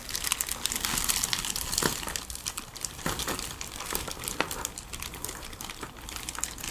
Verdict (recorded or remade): recorded